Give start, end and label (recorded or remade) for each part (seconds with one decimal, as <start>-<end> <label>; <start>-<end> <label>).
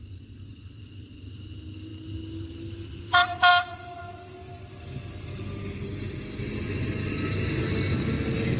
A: 0.0-0.5 recorded; 0.5-1.3 remade; 1.3-8.6 recorded